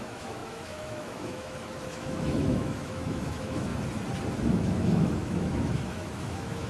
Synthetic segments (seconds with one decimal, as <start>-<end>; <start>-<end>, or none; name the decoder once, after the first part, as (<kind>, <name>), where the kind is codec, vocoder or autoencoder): 0.0-3.7 (autoencoder, DAC-VAE); 4.5-6.7